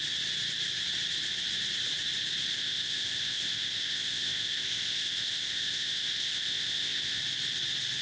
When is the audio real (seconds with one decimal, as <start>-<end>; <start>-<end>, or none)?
0.0-2.5; 7.2-8.0